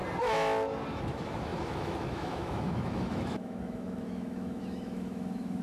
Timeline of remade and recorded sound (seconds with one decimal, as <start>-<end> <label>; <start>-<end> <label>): 0.0-0.9 recorded; 0.9-5.6 remade